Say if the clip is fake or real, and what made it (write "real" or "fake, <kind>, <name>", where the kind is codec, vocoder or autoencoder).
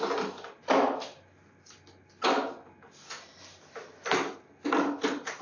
real